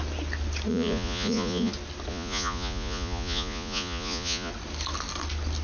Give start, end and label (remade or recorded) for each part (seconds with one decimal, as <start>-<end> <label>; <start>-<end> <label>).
0.0-0.7 recorded; 0.7-1.7 remade; 1.7-2.1 recorded; 2.1-4.5 remade; 4.5-5.6 recorded